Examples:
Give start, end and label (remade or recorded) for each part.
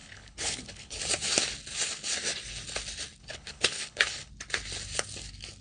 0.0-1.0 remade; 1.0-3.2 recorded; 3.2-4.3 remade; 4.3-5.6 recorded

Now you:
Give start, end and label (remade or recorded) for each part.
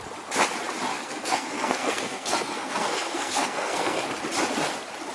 0.0-0.9 recorded; 0.9-4.0 remade; 4.0-5.1 recorded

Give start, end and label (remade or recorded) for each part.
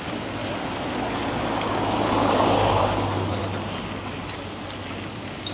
0.0-0.4 remade; 0.4-1.4 recorded; 1.4-3.4 remade; 3.4-5.1 recorded; 5.1-5.5 remade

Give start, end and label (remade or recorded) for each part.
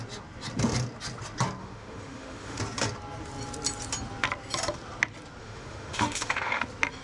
0.0-1.6 recorded; 1.6-2.6 remade; 2.6-5.4 recorded; 5.4-6.6 remade; 6.6-7.0 recorded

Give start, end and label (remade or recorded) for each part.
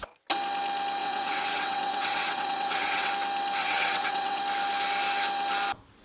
0.0-1.0 recorded; 1.0-3.1 remade; 3.1-3.6 recorded; 3.6-4.4 remade; 4.4-6.0 recorded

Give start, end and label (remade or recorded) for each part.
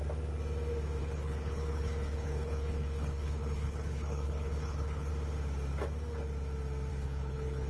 0.0-1.0 recorded; 1.0-5.1 remade; 5.1-6.9 recorded; 6.9-7.7 remade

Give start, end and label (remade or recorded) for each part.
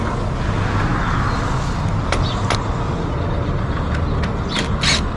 0.0-5.2 recorded